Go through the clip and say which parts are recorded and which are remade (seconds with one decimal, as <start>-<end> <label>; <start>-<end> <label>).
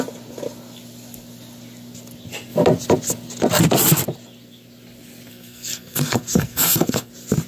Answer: 0.0-5.3 recorded; 5.3-7.1 remade; 7.1-7.5 recorded